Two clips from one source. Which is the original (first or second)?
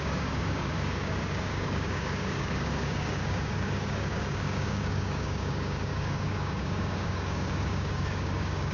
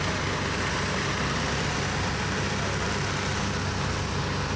second